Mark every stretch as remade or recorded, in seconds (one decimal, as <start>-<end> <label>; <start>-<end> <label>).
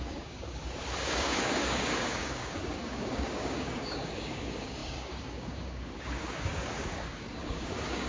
0.0-8.1 remade